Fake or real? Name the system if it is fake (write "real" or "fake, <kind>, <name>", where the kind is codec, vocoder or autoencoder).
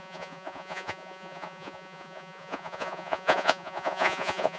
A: fake, vocoder, Vocos